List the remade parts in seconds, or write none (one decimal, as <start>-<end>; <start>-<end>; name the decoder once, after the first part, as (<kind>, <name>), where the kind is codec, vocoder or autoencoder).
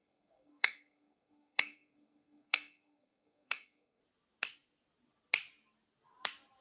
0.0-4.0 (codec, SNAC)